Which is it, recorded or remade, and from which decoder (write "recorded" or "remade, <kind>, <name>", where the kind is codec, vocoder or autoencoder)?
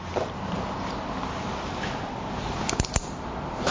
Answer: recorded